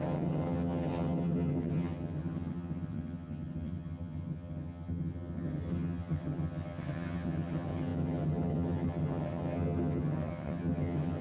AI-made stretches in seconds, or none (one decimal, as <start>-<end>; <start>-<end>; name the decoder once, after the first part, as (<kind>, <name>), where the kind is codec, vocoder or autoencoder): 0.0-11.2 (vocoder, HiFi-GAN)